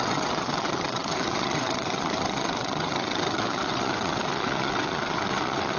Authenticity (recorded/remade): remade